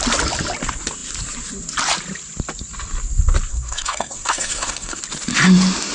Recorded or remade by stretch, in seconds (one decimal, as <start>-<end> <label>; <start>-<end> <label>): 0.0-3.5 recorded; 3.5-5.0 remade; 5.0-5.9 recorded